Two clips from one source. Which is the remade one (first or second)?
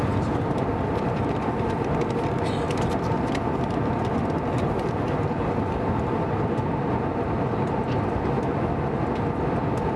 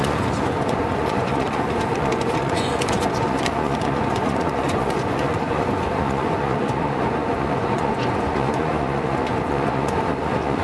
second